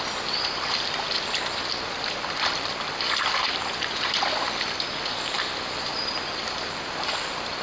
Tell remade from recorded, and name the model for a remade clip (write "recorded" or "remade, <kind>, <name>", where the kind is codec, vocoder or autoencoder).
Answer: recorded